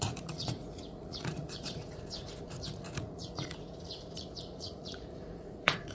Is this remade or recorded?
remade